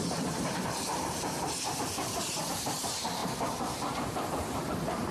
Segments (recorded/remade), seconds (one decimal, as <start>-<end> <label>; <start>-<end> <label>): 0.0-5.1 remade